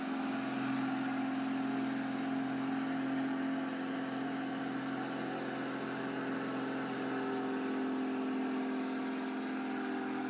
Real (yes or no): yes